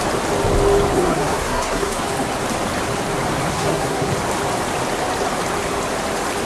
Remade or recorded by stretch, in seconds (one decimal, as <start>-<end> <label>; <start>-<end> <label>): 0.0-0.9 recorded; 0.9-2.0 remade; 2.0-3.5 recorded; 3.5-4.1 remade; 4.1-6.5 recorded